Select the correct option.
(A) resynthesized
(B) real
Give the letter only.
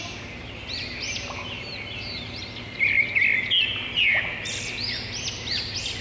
B